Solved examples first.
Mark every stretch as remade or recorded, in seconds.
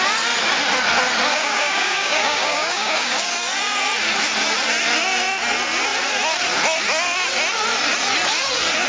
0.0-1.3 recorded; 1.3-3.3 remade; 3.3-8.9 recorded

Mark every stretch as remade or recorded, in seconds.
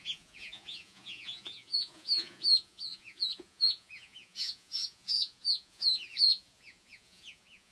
0.0-7.7 remade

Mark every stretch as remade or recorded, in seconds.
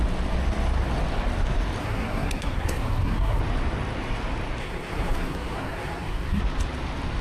0.0-1.8 recorded; 1.8-3.4 remade; 3.4-4.6 recorded; 4.6-6.4 remade; 6.4-7.2 recorded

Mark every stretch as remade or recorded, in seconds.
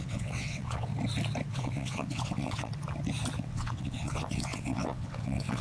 0.0-0.9 remade; 0.9-1.5 recorded; 1.5-2.7 remade; 2.7-3.4 recorded; 3.4-5.6 remade